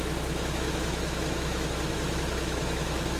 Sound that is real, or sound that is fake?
fake